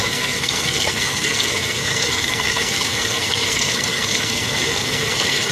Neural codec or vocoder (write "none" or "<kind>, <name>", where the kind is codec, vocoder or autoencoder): codec, SNAC